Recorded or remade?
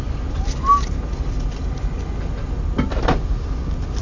recorded